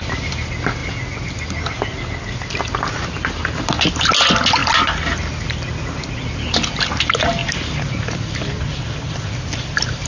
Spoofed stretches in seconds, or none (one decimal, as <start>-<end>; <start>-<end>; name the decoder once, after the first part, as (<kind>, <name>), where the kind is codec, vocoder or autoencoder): 7.4-10.1 (vocoder, BigVGAN v2)